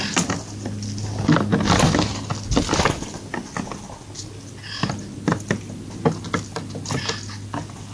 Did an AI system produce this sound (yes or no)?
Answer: no